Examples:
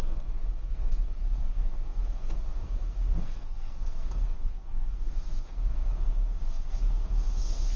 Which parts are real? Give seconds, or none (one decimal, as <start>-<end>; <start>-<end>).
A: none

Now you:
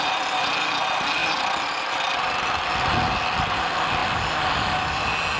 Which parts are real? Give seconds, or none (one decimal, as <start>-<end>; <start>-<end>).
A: 0.0-5.4

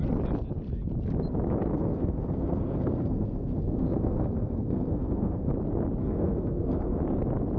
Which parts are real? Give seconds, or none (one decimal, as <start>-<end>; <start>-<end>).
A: 0.0-1.7; 5.5-6.0; 7.0-7.6

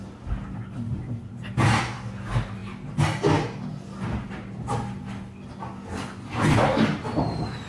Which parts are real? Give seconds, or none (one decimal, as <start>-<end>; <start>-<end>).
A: 0.0-7.7

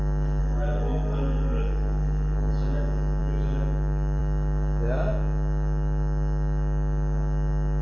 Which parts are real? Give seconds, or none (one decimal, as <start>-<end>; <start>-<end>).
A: 0.0-0.4; 2.5-7.8

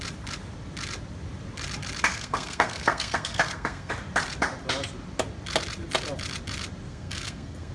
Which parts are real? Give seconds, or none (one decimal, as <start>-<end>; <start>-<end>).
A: 0.0-2.1; 3.9-6.9

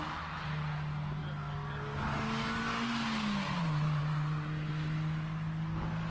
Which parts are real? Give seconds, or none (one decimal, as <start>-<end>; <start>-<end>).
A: 0.0-6.1